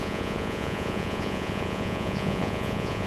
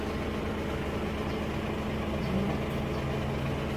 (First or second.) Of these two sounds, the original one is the second